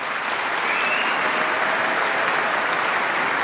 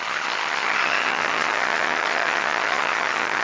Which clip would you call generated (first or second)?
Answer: second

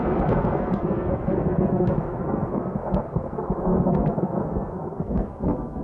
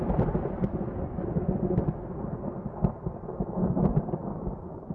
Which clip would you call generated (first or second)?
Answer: first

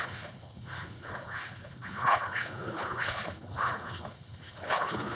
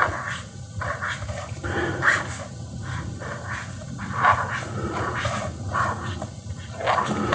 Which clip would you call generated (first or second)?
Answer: first